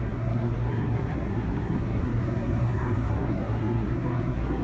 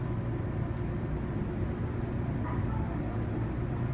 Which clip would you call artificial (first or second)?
first